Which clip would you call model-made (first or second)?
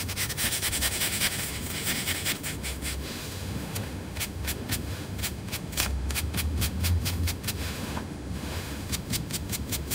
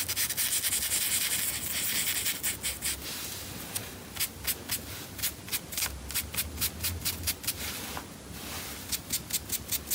first